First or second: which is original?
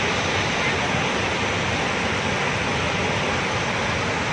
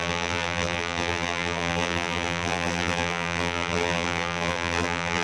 first